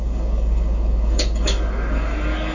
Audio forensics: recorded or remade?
remade